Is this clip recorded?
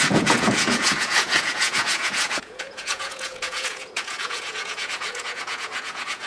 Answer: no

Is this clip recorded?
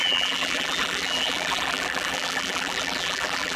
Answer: no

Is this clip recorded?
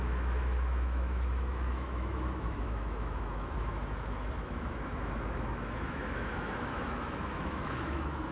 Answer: no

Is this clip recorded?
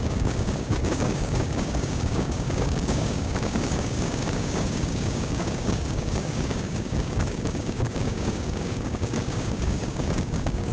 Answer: no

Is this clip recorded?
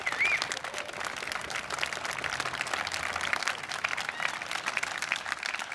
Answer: yes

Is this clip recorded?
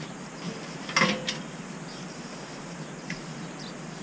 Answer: yes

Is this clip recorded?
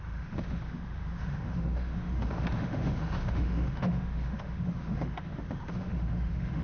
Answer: no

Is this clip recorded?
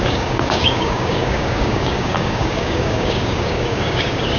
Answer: no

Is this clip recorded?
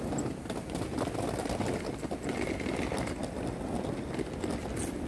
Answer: yes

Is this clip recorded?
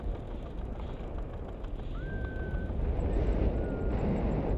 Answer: yes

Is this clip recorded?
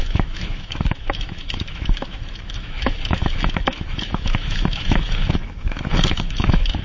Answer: no